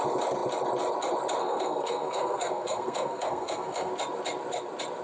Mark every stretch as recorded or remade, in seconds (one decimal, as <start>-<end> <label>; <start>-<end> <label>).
0.0-1.4 recorded; 1.4-3.9 remade; 3.9-5.0 recorded